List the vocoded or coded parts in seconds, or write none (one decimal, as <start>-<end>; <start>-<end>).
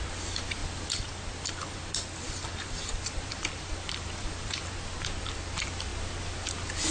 0.6-4.7